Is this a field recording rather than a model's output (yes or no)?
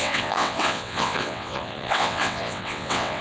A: no